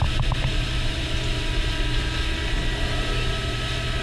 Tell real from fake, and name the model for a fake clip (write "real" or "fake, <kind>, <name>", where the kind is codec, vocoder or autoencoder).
real